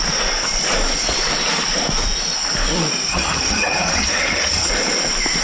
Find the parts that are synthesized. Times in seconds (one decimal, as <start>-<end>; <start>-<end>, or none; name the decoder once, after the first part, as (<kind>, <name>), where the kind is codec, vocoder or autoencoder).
3.1-4.7 (vocoder, HiFi-GAN)